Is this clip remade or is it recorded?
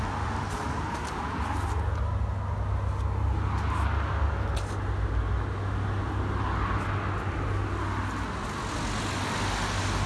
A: recorded